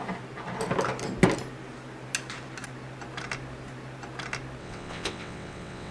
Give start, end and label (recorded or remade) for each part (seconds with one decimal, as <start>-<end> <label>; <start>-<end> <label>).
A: 0.0-4.6 recorded; 4.6-5.9 remade